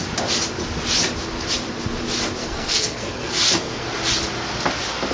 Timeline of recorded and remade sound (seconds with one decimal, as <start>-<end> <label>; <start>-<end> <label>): 0.0-2.4 recorded; 2.4-3.9 remade; 3.9-5.1 recorded